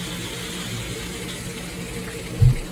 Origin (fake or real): real